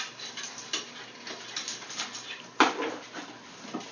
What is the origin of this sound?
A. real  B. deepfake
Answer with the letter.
A